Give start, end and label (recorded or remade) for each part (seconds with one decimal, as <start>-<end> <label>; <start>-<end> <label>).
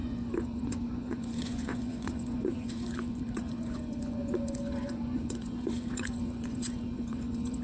0.0-7.6 remade